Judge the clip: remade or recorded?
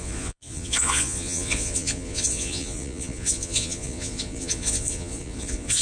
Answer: remade